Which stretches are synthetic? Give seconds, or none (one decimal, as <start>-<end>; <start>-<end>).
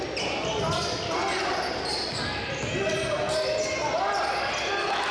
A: none